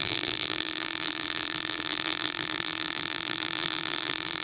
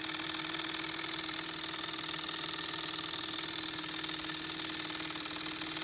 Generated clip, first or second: first